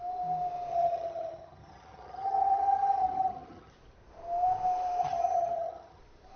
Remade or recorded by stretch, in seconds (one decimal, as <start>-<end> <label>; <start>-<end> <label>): 0.0-0.7 recorded; 0.7-3.7 remade; 3.7-5.0 recorded; 5.0-6.0 remade; 6.0-6.4 recorded